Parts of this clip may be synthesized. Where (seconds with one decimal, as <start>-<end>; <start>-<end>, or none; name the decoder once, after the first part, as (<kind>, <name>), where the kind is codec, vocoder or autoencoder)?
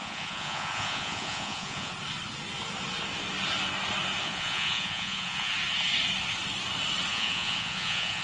0.0-1.9 (vocoder, Vocos); 4.2-5.5; 7.1-8.2